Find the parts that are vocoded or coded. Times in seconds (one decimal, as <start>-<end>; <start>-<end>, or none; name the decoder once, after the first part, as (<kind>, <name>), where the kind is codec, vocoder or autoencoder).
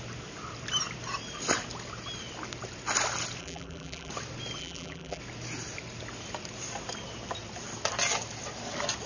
3.4-4.1 (vocoder, BigVGAN v2); 4.6-5.2